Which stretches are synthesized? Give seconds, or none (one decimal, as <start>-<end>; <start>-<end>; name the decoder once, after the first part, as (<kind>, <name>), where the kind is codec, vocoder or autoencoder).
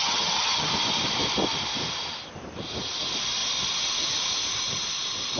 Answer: 0.0-0.7 (vocoder, HiFi-GAN)